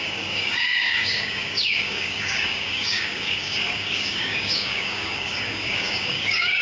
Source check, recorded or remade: remade